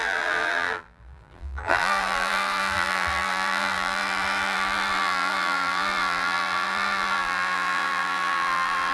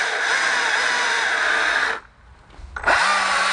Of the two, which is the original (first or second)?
second